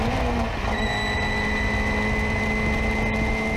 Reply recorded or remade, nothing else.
recorded